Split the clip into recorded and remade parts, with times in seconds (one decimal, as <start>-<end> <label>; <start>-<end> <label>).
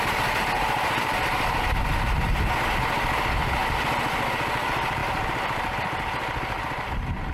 0.0-7.3 recorded